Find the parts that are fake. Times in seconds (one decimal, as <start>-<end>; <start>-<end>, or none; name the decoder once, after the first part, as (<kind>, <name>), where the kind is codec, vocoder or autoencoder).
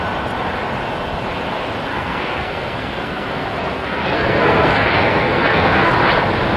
1.9-5.9 (codec, SNAC)